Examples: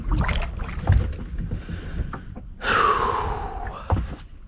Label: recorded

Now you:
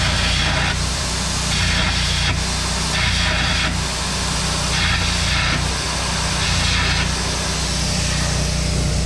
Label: recorded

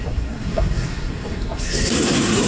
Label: remade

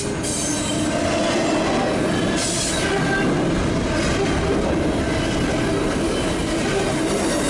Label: recorded